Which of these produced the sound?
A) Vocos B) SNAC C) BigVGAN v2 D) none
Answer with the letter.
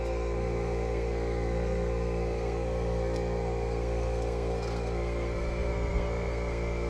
B